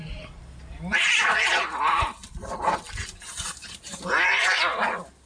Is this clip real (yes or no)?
yes